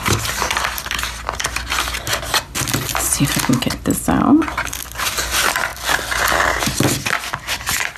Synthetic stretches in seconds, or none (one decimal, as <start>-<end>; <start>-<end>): none